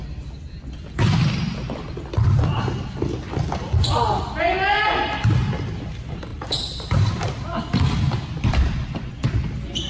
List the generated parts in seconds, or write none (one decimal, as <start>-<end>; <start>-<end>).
6.3-7.6